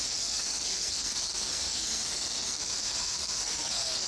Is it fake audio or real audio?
fake